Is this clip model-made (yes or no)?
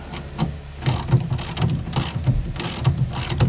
no